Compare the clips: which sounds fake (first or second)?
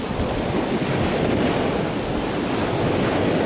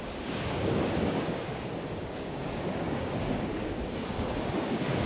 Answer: second